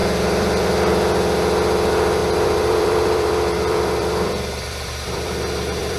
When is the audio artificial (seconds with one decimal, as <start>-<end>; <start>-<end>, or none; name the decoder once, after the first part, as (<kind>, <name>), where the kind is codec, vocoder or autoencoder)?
0.0-0.9 (vocoder, BigVGAN v2); 2.2-6.0